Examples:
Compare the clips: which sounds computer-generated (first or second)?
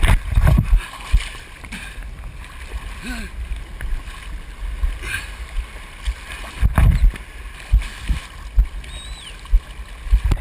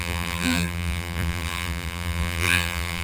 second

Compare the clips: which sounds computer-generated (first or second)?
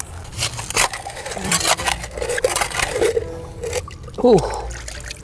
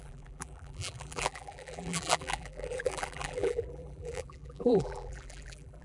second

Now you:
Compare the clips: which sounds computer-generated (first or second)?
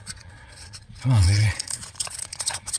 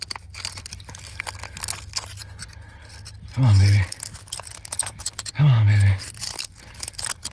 first